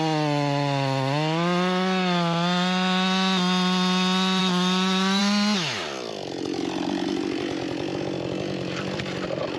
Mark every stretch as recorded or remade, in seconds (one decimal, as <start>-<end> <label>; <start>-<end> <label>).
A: 0.0-4.4 recorded; 4.4-5.2 remade; 5.2-9.6 recorded